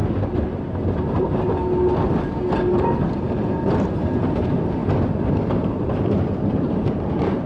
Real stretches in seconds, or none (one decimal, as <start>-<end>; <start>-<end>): 0.0-3.2; 4.8-5.5